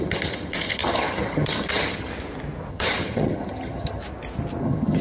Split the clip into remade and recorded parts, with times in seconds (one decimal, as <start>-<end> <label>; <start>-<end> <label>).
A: 0.0-2.1 remade; 2.1-2.7 recorded; 2.7-4.0 remade; 4.0-4.6 recorded; 4.6-5.0 remade